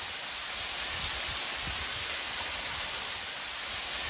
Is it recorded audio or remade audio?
recorded